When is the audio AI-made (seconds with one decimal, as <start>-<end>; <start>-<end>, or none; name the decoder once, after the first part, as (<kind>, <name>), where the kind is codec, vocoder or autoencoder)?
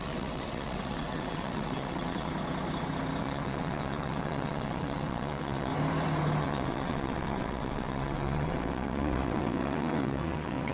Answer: 0.0-2.3 (vocoder, WaveNeXt); 3.2-5.7; 6.4-10.7